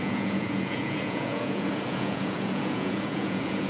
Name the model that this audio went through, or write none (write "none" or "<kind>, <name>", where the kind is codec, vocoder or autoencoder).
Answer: vocoder, Vocos